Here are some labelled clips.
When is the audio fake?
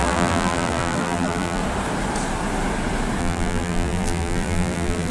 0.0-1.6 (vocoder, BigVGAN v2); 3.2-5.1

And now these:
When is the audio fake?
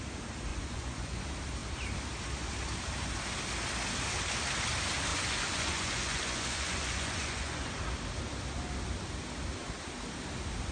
0.5-1.2 (vocoder, Vocos); 5.1-7.7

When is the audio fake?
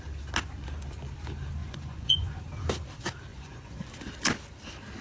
1.6-2.4 (vocoder, Vocos); 3.3-3.9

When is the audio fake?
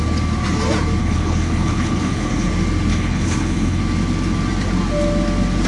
1.0-2.5 (codec, HILCodec); 2.9-3.8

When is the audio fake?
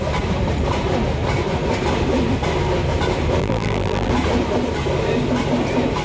3.4-4.1 (vocoder, BigVGAN v2)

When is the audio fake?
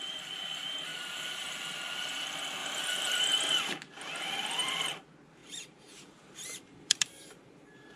0.9-1.4 (vocoder, BigVGAN v2); 2.6-3.3; 5.4-7.4